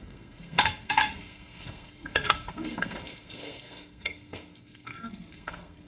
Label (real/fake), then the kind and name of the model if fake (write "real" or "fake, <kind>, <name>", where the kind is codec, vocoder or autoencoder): fake, codec, SNAC